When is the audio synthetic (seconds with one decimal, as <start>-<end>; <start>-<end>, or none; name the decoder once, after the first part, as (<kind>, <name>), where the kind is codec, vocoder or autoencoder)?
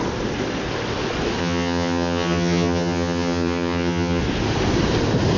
1.4-4.2 (vocoder, HiFi-GAN)